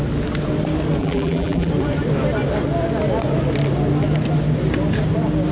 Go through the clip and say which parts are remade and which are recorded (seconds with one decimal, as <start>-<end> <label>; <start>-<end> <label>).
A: 0.0-1.0 recorded; 1.0-1.7 remade; 1.7-5.5 recorded